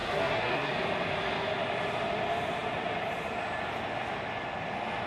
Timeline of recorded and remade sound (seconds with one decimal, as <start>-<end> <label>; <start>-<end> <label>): 0.0-0.7 remade; 0.7-5.1 recorded